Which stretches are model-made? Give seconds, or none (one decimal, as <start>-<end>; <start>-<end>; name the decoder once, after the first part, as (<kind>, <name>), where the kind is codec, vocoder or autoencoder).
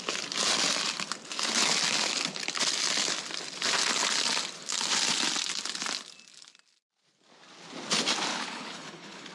8.3-9.3 (codec, HILCodec)